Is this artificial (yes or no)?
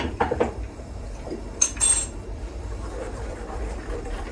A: yes